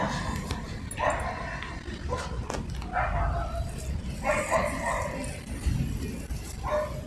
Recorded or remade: recorded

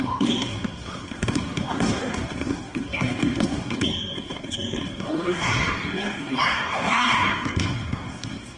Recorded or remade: remade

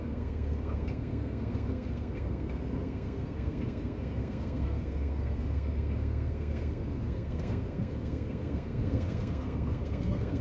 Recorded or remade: remade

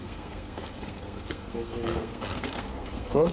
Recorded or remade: remade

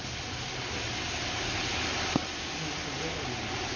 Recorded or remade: recorded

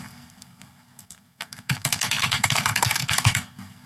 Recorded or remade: remade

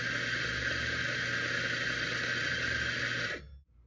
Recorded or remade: recorded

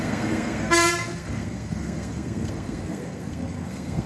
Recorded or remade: remade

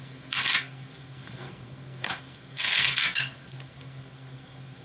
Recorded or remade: remade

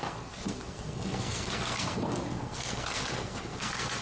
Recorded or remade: remade